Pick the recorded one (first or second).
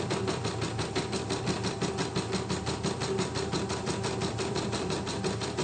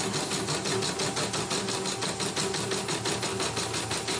second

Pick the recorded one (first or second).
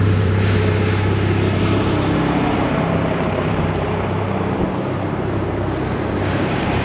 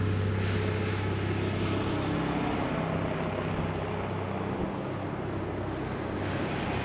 second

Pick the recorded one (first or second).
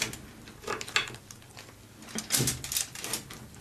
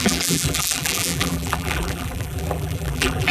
first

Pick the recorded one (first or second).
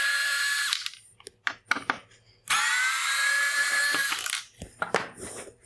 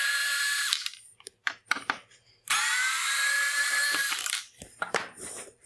first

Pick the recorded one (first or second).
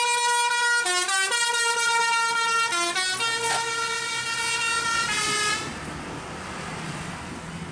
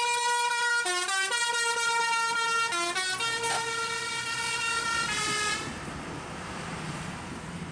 first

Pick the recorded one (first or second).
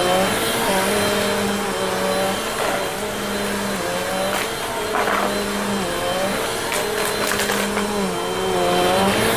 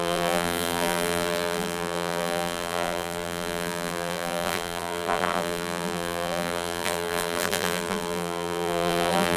first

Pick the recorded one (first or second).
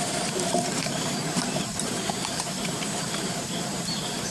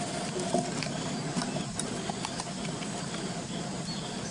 second